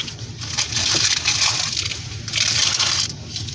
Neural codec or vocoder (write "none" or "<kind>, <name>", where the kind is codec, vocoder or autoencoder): none